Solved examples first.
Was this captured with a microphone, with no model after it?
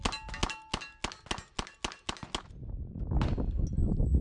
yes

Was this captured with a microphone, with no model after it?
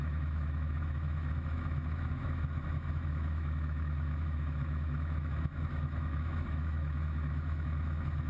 no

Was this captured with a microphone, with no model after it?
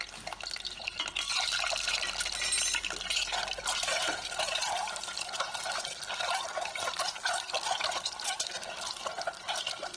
yes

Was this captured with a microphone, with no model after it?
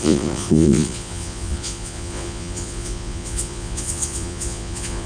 no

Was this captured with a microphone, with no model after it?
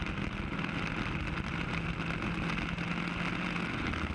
yes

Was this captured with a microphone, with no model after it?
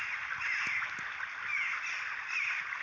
yes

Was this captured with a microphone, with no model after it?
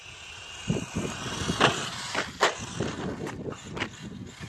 yes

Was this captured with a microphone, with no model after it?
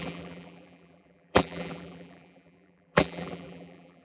no